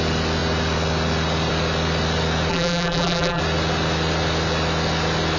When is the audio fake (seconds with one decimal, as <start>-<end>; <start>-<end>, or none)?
2.5-3.4